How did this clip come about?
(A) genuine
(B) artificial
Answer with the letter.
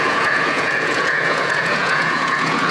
B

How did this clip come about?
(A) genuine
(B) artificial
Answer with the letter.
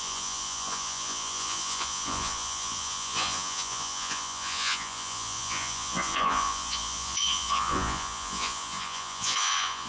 B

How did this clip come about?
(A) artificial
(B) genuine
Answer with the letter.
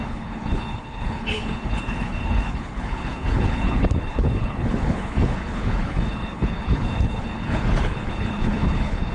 A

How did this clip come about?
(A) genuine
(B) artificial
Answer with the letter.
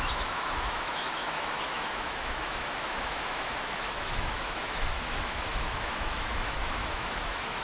B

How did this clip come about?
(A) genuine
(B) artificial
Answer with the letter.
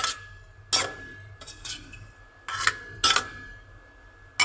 A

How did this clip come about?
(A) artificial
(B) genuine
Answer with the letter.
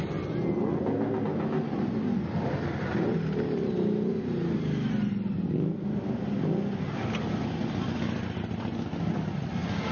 B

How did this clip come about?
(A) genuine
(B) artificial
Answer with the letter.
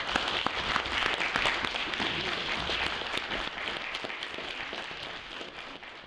A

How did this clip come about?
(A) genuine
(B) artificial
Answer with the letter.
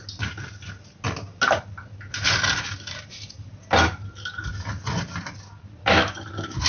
A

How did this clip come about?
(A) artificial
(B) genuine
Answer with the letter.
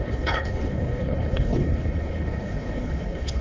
A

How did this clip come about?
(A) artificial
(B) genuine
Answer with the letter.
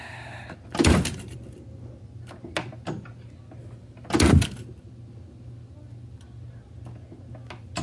B